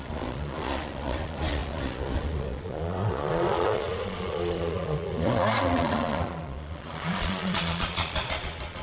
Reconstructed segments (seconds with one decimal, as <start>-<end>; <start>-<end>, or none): 0.0-8.8